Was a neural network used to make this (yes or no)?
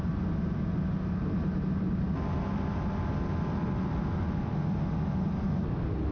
no